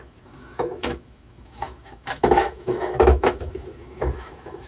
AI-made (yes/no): yes